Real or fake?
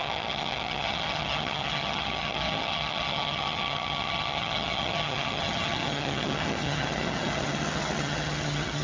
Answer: fake